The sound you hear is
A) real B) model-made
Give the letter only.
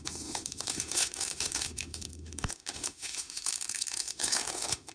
B